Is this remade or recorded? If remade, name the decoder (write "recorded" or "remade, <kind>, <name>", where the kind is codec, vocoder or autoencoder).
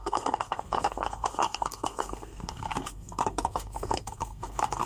remade, codec, SNAC